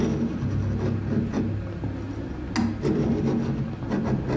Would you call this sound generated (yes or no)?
no